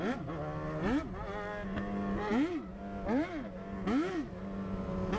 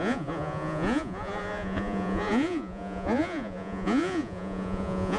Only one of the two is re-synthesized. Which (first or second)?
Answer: second